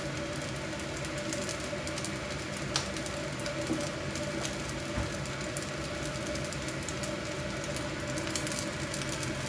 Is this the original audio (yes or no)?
yes